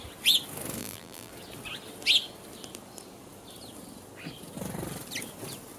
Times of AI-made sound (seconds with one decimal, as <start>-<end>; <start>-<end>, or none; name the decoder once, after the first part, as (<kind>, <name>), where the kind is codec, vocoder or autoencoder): 0.8-1.3 (vocoder, BigVGAN v2)